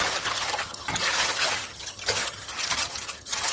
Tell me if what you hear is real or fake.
fake